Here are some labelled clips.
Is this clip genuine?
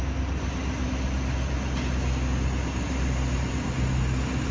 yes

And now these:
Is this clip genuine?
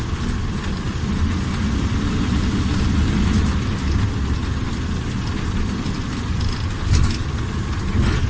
yes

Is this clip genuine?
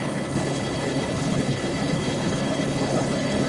no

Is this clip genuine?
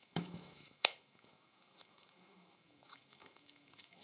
no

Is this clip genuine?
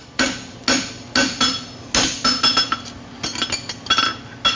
yes